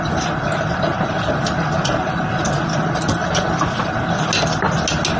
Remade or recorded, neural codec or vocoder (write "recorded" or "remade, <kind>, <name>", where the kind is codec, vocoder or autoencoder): recorded